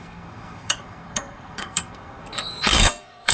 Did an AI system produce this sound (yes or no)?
yes